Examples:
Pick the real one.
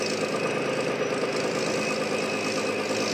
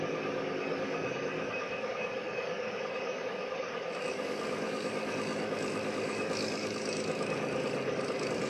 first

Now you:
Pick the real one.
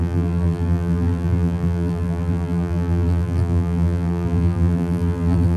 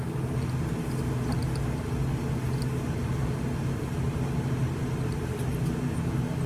second